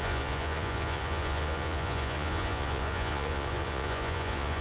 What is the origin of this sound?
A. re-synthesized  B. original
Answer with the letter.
A